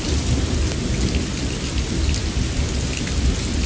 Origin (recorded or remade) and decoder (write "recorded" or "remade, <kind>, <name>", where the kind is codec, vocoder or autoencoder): recorded